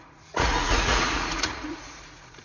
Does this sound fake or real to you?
fake